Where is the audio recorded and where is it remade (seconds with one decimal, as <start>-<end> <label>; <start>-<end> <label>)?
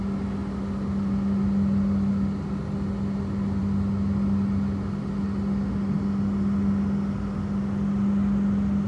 0.0-8.9 recorded